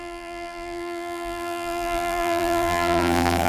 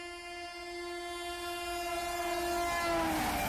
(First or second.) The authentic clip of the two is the second